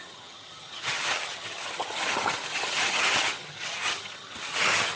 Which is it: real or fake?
fake